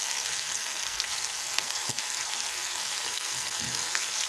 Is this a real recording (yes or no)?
no